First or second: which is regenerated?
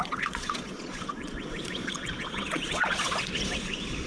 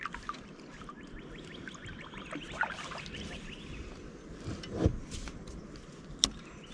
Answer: first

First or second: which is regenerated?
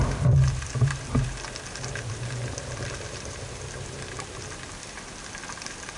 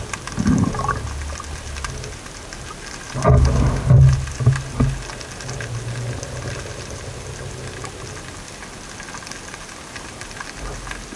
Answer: first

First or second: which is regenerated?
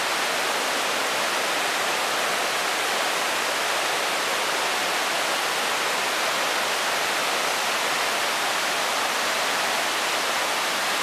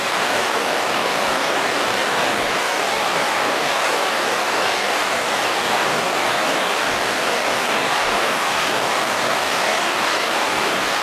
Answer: second